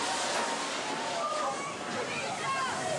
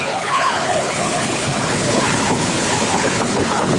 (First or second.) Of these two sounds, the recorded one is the first